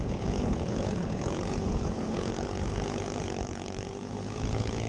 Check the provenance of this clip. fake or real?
fake